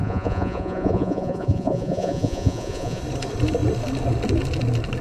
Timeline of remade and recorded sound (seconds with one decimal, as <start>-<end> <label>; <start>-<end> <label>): 0.0-3.0 remade; 3.0-5.0 recorded